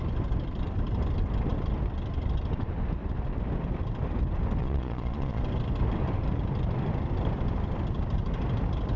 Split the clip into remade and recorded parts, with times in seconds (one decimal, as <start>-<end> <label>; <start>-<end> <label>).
0.0-4.6 recorded; 4.6-5.4 remade; 5.4-9.0 recorded